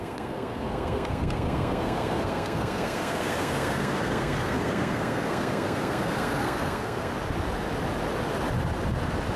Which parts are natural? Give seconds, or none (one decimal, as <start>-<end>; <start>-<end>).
7.1-9.4